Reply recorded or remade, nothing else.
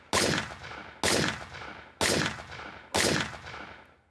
recorded